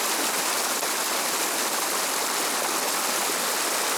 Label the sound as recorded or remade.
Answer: recorded